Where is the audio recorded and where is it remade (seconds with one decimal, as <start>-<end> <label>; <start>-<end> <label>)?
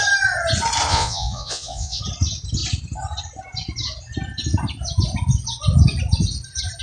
0.0-0.9 recorded; 0.9-2.0 remade; 2.0-6.8 recorded